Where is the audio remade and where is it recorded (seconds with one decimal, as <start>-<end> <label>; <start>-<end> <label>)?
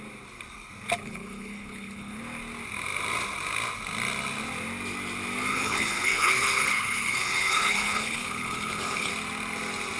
0.0-1.0 recorded; 1.0-2.2 remade; 2.2-5.5 recorded; 5.5-9.1 remade; 9.1-10.0 recorded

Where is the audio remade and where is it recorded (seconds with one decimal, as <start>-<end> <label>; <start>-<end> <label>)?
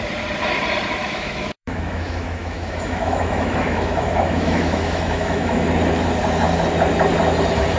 0.0-1.0 recorded; 1.0-5.7 remade; 5.7-7.8 recorded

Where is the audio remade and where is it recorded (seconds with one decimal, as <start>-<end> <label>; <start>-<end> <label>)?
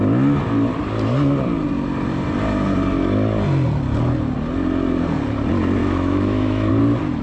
0.0-5.8 recorded; 5.8-6.7 remade; 6.7-7.2 recorded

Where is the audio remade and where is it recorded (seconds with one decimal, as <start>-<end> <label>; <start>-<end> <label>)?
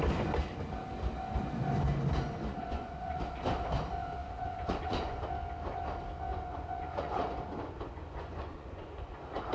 0.0-2.5 recorded; 2.5-3.2 remade; 3.2-4.2 recorded; 4.2-5.2 remade; 5.2-6.3 recorded; 6.3-9.5 remade